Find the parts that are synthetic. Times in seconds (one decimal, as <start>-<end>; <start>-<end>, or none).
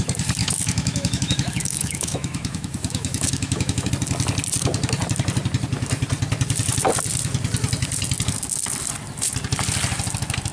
0.4-3.9